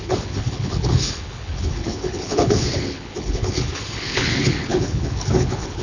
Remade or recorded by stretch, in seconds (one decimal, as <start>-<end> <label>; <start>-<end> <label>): 0.0-5.8 remade